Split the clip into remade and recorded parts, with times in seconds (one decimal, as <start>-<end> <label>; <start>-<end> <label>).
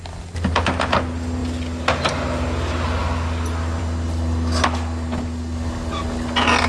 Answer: 0.0-6.7 recorded